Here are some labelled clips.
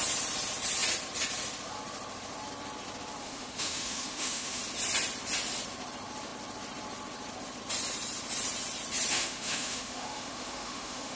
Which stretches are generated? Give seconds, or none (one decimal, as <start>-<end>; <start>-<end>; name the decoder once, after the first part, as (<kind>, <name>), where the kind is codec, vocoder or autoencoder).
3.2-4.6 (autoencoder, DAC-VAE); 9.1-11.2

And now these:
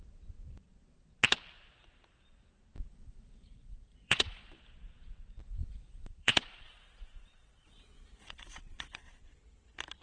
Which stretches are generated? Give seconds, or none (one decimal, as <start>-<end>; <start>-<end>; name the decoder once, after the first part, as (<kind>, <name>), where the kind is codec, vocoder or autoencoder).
2.9-4.6 (vocoder, Vocos); 5.6-9.2

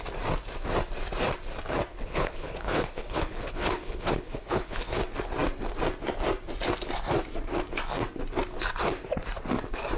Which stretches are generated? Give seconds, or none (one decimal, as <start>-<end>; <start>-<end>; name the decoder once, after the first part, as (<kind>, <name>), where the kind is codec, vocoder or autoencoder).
1.9-5.0 (codec, HILCodec)

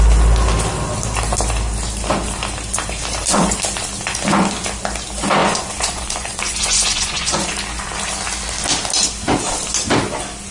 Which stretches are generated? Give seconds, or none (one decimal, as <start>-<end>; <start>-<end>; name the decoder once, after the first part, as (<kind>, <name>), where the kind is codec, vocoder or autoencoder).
5.4-7.5 (vocoder, Vocos)